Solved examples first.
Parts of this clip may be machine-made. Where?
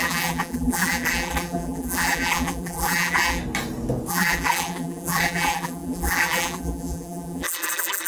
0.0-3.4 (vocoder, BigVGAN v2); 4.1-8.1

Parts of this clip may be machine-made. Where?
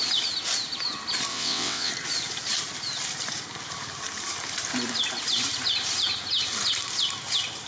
1.3-1.9 (vocoder, WaveNeXt)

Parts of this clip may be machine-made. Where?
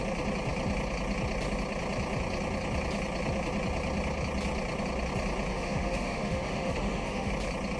5.5-7.3 (autoencoder, DAC-VAE)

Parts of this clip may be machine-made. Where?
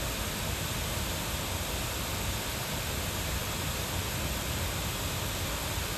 none